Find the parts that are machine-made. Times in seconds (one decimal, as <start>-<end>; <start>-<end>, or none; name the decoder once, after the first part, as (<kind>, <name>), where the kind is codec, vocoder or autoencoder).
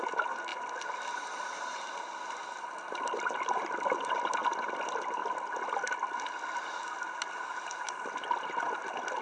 none